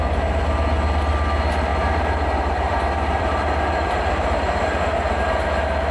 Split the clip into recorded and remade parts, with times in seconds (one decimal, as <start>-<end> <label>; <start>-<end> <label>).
0.0-1.7 recorded; 1.7-5.2 remade; 5.2-5.9 recorded